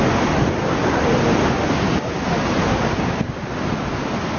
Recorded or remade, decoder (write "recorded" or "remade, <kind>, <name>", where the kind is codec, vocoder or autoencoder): recorded